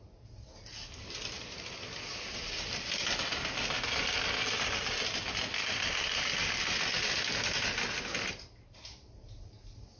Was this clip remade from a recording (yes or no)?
no